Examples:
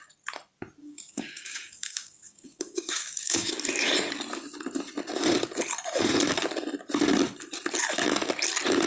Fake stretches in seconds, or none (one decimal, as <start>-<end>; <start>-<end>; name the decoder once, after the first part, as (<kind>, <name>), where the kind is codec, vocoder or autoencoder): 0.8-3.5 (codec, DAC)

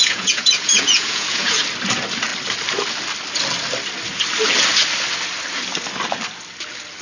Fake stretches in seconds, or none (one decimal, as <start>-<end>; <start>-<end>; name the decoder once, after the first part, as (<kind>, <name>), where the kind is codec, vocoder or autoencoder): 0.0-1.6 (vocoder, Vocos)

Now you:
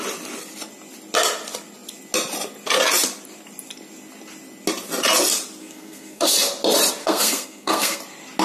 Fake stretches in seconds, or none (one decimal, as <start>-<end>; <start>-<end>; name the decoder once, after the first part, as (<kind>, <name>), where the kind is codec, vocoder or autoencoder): 5.6-6.3 (codec, SNAC); 7.0-8.0